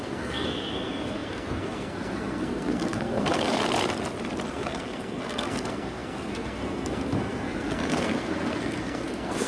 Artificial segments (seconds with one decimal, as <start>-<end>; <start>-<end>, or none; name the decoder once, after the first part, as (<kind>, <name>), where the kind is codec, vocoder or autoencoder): 0.0-3.6 (codec, SNAC); 4.5-9.5